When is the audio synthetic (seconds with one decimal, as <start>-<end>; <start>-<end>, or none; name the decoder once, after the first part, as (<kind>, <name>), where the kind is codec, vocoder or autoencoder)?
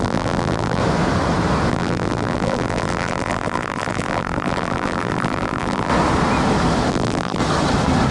0.0-0.8 (vocoder, BigVGAN v2); 1.7-5.9; 6.9-7.4